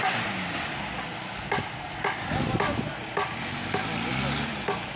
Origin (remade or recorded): recorded